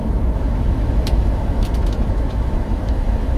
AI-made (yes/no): yes